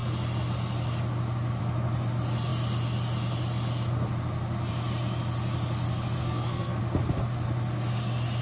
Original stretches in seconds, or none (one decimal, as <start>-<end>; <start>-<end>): 0.0-6.2; 6.8-8.4